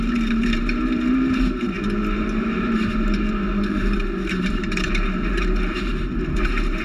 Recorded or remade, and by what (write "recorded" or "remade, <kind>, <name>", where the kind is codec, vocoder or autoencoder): remade, vocoder, BigVGAN v2